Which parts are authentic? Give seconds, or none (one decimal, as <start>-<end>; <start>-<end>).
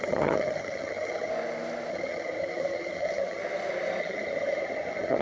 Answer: 1.3-1.9; 3.4-4.0